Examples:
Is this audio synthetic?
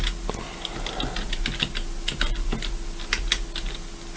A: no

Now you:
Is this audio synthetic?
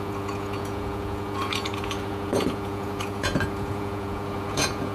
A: yes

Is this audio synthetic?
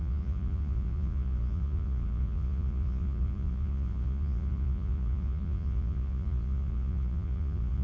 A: yes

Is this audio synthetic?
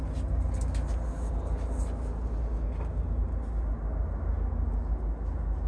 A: no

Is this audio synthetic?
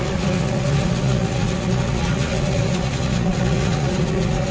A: yes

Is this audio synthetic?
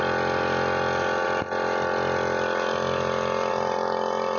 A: no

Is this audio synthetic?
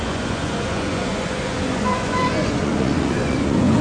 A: yes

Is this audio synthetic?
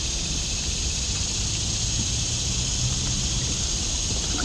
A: no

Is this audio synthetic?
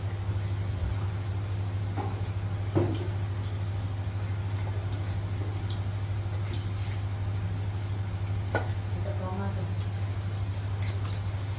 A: no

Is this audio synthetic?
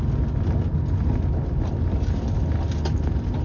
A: no